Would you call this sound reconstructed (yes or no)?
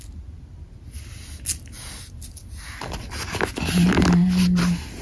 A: no